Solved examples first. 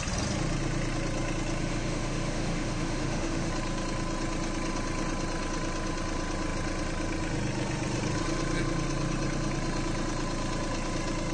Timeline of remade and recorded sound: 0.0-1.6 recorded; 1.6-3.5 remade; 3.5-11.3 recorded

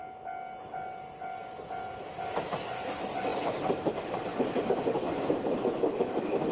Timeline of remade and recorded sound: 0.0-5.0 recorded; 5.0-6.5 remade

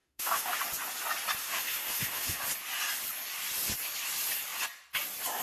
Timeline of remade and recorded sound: 0.0-0.6 remade; 0.6-1.4 recorded; 1.4-2.4 remade; 2.4-5.4 recorded

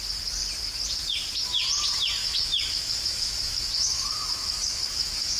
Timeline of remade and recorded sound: 0.0-2.2 recorded; 2.2-5.4 remade

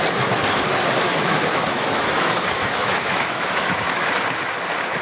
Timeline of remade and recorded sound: 0.0-1.1 recorded; 1.1-4.1 remade; 4.1-5.0 recorded

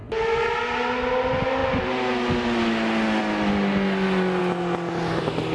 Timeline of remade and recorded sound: 0.0-5.5 recorded